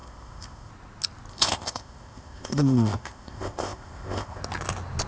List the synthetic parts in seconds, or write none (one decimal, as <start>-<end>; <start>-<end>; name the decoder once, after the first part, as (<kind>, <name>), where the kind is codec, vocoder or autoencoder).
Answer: 0.0-0.7 (codec, ZipCodec); 1.3-4.4